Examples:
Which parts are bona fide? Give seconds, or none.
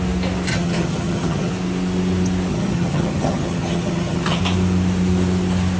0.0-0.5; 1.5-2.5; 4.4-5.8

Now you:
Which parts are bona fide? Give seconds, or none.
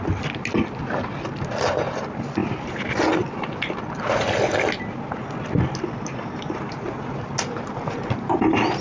0.0-8.8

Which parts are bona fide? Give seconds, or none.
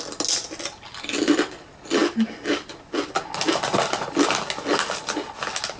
0.0-5.8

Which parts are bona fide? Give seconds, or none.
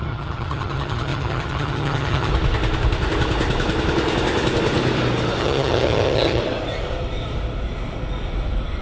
2.3-5.4; 6.4-8.8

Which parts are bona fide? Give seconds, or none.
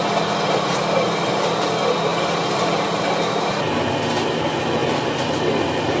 0.0-6.0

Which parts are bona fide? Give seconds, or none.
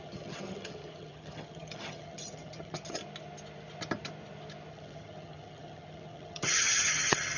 3.0-4.7